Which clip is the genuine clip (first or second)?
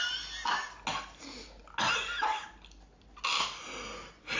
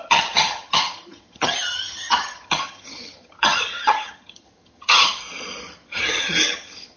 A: first